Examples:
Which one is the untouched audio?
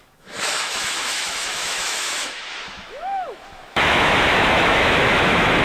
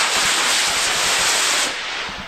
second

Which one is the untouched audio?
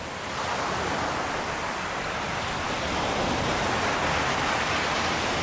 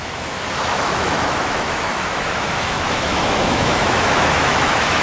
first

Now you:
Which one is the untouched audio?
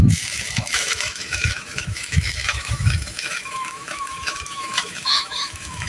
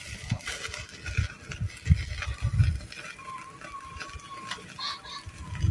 second